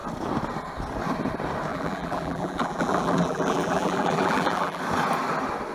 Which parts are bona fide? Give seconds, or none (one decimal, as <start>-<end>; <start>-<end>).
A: 0.0-1.7; 4.8-5.7

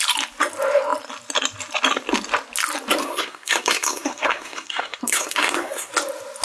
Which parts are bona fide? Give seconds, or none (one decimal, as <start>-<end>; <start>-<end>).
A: 0.0-3.0; 5.9-6.4

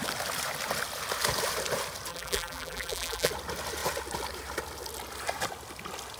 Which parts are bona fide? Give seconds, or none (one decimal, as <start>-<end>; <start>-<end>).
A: 0.0-2.1; 3.3-6.2